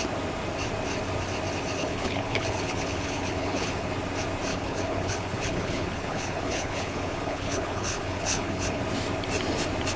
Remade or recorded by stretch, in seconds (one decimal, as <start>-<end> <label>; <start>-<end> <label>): 0.0-1.8 recorded; 1.8-3.9 remade; 3.9-4.5 recorded; 4.5-8.8 remade; 8.8-10.0 recorded